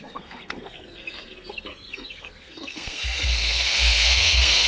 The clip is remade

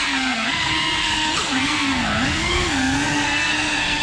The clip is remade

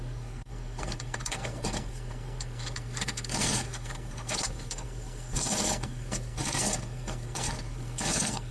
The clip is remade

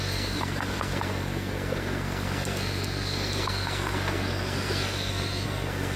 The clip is remade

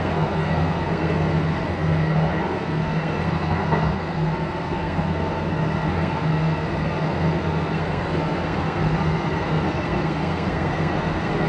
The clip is remade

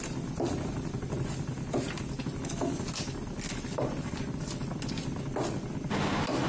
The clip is recorded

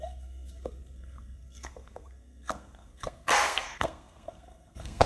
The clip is remade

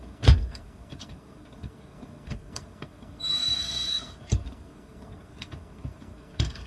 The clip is remade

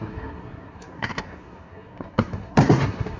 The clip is remade